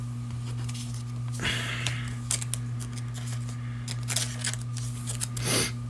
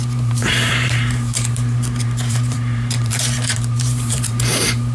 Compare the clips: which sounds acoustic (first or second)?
first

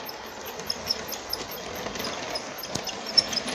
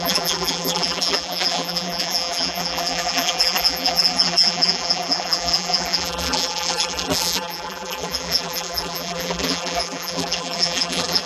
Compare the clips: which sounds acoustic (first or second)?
first